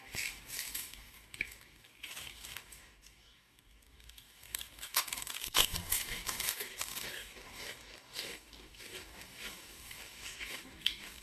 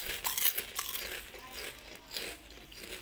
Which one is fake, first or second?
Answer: first